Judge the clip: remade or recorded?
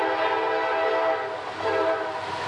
recorded